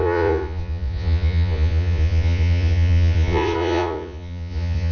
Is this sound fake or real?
fake